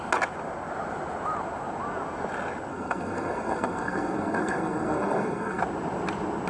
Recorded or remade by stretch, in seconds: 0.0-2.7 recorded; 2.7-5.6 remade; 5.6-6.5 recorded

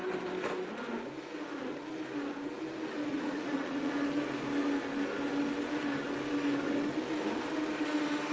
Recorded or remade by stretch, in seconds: 0.0-3.0 recorded; 3.0-3.9 remade; 3.9-8.3 recorded

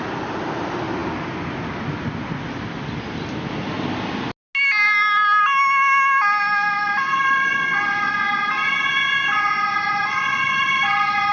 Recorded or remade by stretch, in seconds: 0.0-11.3 recorded

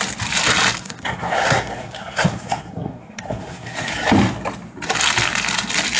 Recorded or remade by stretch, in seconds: 0.0-0.8 recorded; 0.8-3.9 remade; 3.9-6.0 recorded

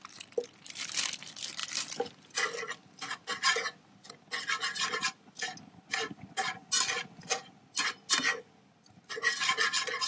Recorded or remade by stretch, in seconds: 0.0-1.6 recorded; 1.6-4.1 remade; 4.1-10.1 recorded